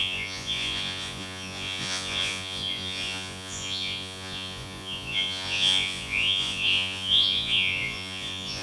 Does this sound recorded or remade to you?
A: remade